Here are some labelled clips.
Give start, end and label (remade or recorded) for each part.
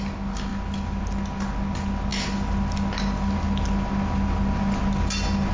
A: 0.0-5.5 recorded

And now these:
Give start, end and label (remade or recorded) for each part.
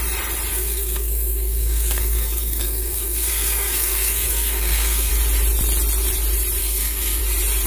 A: 0.0-0.5 recorded; 0.5-5.1 remade; 5.1-6.6 recorded; 6.6-7.2 remade; 7.2-7.7 recorded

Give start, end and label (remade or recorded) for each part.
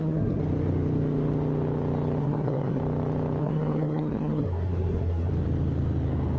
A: 0.0-0.4 remade; 0.4-2.2 recorded; 2.2-2.8 remade; 2.8-3.4 recorded; 3.4-5.3 remade; 5.3-6.4 recorded